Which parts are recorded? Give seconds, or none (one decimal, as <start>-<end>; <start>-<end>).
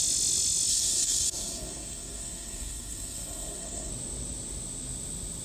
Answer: 0.0-0.7; 3.9-5.4